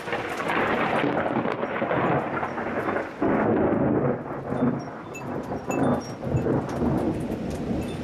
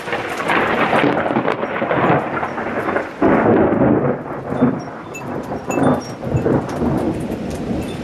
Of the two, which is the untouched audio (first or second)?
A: first